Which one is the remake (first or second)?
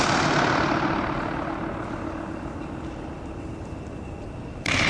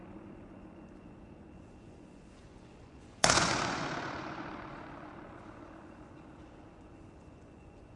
second